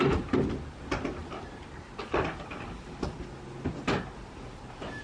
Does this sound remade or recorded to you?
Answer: recorded